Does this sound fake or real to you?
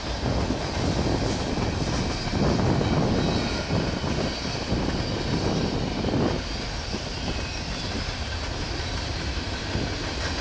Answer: real